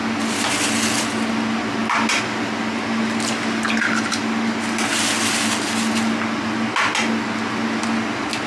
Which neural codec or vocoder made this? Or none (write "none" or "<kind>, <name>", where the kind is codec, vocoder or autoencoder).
none